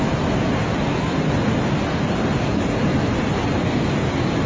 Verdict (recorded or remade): recorded